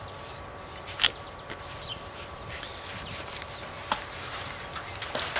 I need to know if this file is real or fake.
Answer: real